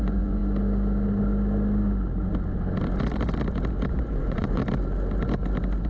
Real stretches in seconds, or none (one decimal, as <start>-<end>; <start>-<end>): 0.4-3.9; 4.6-5.9